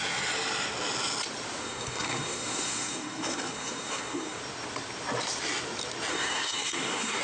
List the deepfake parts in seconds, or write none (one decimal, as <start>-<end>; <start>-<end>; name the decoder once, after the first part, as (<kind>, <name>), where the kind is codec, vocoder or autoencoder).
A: 1.6-4.4 (codec, SNAC); 6.1-7.2